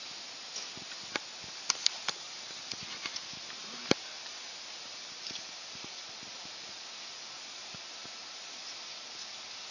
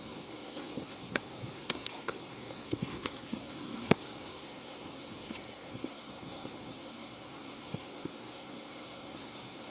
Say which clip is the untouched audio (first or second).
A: first